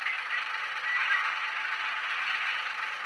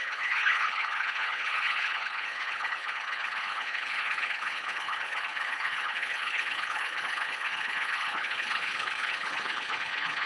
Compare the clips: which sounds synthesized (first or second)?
second